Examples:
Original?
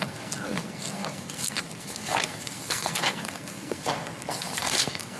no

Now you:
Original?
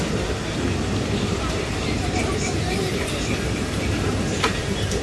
no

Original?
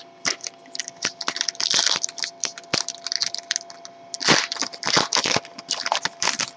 yes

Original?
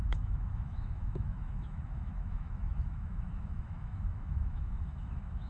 no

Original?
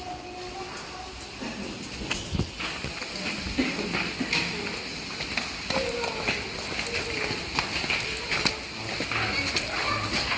yes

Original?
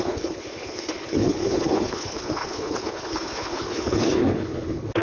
no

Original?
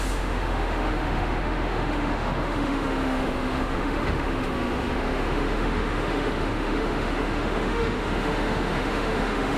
no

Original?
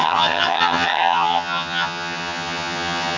no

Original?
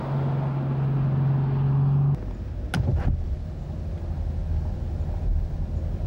yes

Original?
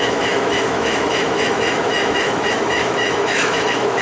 no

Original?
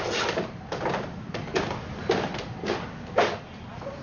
yes